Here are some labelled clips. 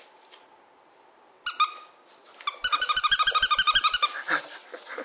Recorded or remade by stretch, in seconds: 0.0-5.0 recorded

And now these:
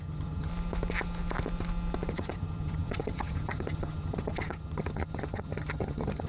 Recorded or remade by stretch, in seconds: 0.0-0.5 remade; 0.5-2.1 recorded; 2.1-6.3 remade

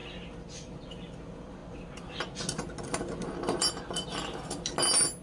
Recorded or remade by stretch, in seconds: 0.0-5.2 recorded

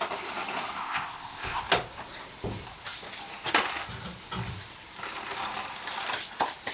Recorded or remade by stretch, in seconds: 0.0-0.8 recorded; 0.8-1.6 remade; 1.6-6.7 recorded

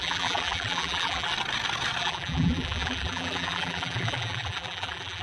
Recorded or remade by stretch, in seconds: 0.0-1.3 remade; 1.3-2.0 recorded; 2.0-5.2 remade